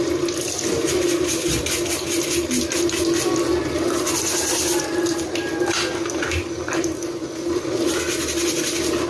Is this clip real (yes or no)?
yes